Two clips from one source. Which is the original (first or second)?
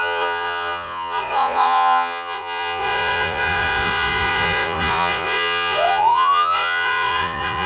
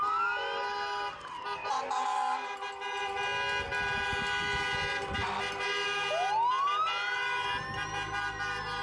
second